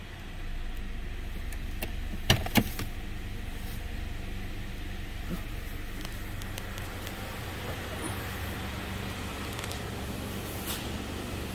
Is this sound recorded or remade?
recorded